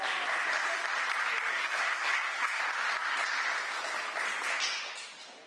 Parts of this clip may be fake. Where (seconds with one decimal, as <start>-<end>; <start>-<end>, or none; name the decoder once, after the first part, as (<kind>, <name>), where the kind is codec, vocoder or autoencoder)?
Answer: 1.5-2.6 (codec, SNAC)

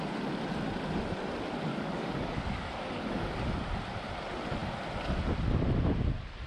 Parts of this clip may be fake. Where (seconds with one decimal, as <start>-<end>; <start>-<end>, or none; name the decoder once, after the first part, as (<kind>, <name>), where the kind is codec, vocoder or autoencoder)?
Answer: 1.7-3.3 (codec, DAC)